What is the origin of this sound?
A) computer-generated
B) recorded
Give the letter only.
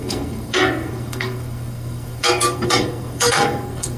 A